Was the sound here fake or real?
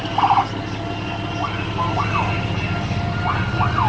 real